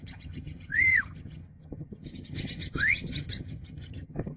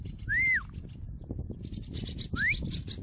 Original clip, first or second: second